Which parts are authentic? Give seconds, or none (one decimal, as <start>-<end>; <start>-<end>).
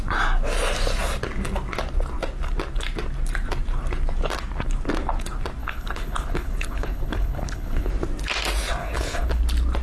0.0-5.6; 7.9-8.8; 9.4-9.8